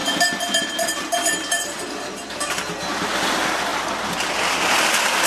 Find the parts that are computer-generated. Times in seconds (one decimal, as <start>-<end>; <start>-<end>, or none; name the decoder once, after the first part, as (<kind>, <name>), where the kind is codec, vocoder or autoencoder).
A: 1.1-2.6 (vocoder, BigVGAN v2); 3.7-4.3